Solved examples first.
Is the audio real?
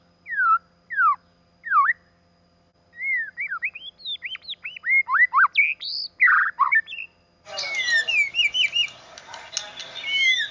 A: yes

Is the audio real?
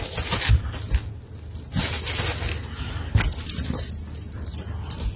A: yes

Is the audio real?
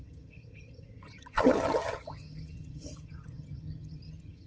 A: no